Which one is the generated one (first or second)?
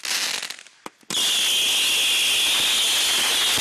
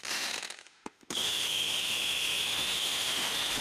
second